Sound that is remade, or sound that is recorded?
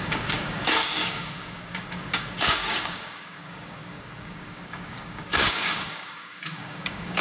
remade